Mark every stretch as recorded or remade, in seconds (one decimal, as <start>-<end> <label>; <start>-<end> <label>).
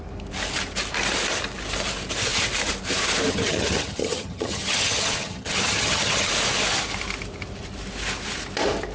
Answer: 0.0-3.3 recorded; 3.3-6.3 remade; 6.3-8.9 recorded